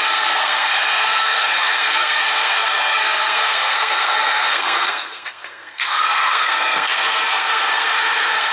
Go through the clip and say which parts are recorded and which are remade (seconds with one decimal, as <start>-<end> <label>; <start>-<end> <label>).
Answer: 0.0-8.5 remade